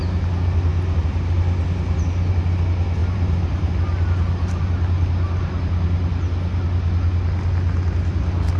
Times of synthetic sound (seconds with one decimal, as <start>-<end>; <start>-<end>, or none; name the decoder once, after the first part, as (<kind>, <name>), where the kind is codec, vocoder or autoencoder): 3.0-3.7 (vocoder, BigVGAN v2)